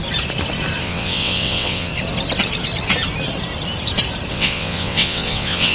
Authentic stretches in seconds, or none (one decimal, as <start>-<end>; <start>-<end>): 0.0-0.8; 1.9-4.3